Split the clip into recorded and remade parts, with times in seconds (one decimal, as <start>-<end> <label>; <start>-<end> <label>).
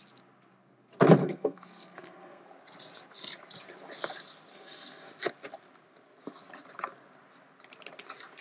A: 0.0-1.2 recorded; 1.2-2.4 remade; 2.4-4.5 recorded; 4.5-5.1 remade; 5.1-8.4 recorded